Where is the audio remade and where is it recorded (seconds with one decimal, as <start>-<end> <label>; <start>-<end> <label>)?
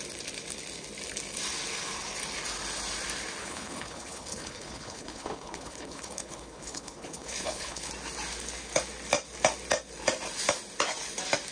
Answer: 0.0-3.4 recorded; 3.4-7.9 remade; 7.9-11.5 recorded